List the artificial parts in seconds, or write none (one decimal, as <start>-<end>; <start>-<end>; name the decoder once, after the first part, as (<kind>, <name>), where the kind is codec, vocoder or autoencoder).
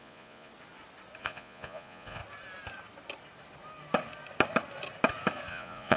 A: 0.0-0.5 (vocoder, Vocos); 1.2-2.2; 5.5-6.0